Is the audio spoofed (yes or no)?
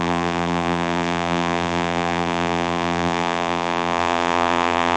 yes